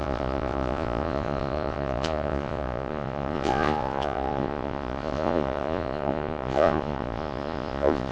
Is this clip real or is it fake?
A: fake